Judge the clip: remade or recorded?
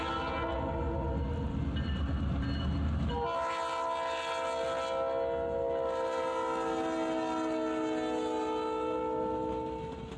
recorded